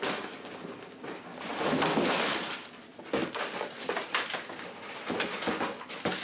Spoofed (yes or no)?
no